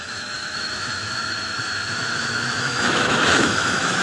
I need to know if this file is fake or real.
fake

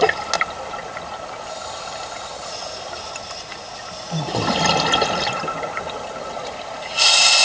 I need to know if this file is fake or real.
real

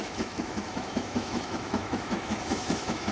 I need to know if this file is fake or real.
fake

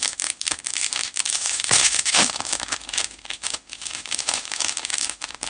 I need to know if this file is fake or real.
fake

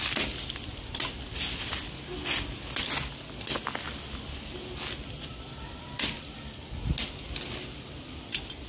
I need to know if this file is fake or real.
real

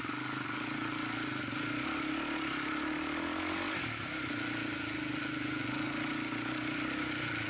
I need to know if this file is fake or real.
real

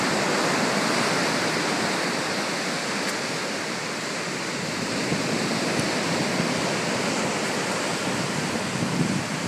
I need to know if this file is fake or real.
real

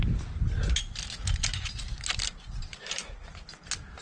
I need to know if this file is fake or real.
real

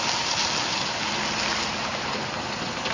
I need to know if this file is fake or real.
real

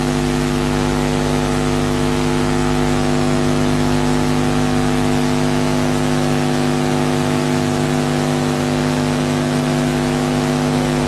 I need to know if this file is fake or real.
fake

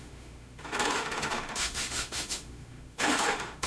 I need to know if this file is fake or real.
fake